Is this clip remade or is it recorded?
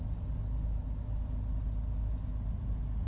recorded